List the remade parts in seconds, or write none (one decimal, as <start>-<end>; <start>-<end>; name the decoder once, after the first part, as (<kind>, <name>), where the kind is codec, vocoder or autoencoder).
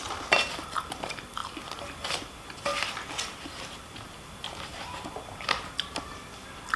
none